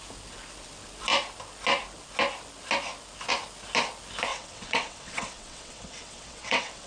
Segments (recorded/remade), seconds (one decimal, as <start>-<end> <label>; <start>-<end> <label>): 0.0-4.3 recorded; 4.3-6.9 remade